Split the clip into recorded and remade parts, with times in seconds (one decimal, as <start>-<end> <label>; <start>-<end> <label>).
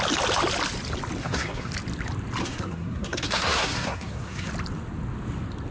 0.0-1.2 recorded; 1.2-1.7 remade; 1.7-2.4 recorded; 2.4-4.5 remade; 4.5-5.7 recorded